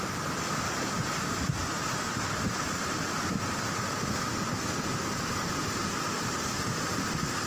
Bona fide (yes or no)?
yes